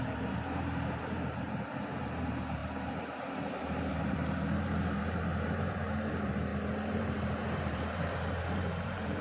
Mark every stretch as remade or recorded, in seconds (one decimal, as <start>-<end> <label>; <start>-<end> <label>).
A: 0.0-6.5 remade; 6.5-7.0 recorded; 7.0-9.2 remade